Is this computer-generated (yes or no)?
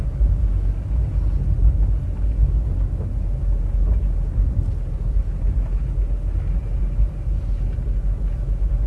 no